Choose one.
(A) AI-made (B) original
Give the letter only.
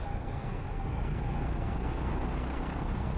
A